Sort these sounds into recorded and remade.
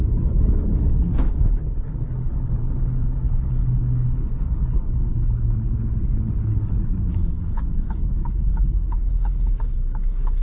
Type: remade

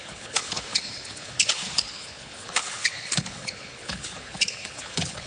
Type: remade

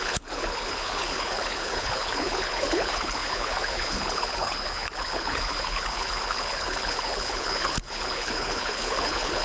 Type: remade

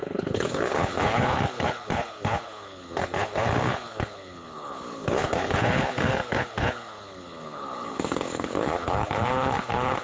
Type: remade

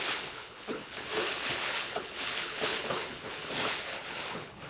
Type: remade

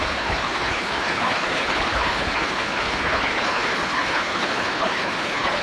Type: remade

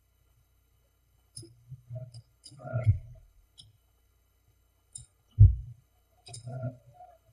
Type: remade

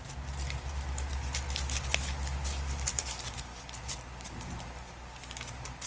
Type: recorded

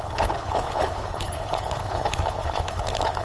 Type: remade